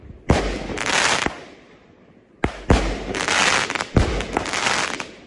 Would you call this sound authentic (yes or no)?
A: yes